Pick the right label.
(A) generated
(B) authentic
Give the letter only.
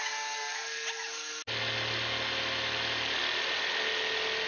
B